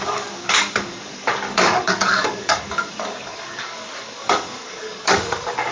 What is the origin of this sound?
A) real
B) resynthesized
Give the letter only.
B